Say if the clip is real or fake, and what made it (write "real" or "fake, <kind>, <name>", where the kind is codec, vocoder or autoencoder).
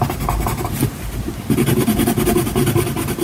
real